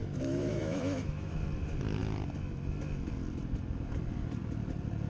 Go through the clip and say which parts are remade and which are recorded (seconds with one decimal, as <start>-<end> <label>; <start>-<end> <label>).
0.0-1.4 remade; 1.4-5.1 recorded